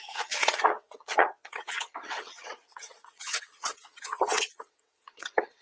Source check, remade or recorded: remade